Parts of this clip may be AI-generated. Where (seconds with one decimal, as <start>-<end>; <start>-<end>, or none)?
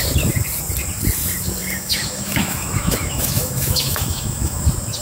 1.6-4.6